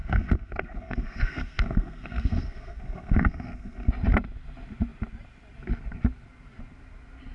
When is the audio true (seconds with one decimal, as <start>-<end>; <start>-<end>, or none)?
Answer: 3.9-7.3